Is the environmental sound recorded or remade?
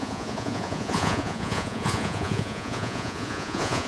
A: remade